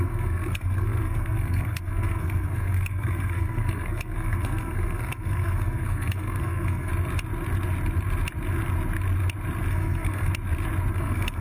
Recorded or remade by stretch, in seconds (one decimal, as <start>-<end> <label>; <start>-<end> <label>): 0.0-6.9 remade; 6.9-9.7 recorded; 9.7-10.3 remade; 10.3-10.9 recorded; 10.9-11.4 remade